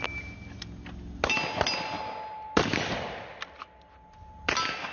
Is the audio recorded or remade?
recorded